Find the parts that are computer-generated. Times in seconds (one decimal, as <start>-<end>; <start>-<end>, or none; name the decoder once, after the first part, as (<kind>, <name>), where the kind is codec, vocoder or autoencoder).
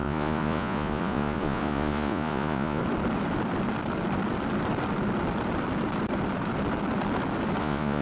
0.0-2.8 (vocoder, Vocos); 7.6-8.0